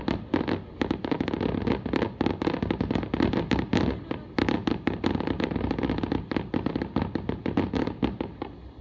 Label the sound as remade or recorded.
recorded